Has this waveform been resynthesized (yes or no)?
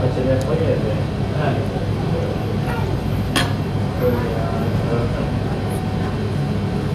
no